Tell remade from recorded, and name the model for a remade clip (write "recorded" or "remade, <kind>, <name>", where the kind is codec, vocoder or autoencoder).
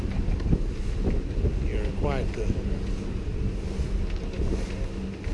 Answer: recorded